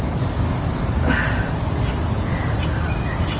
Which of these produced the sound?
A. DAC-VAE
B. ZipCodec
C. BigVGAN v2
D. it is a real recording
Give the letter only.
D